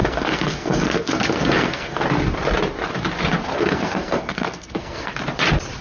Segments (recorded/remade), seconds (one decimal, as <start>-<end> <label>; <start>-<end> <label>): 0.0-2.0 remade; 2.0-3.5 recorded; 3.5-5.1 remade; 5.1-5.8 recorded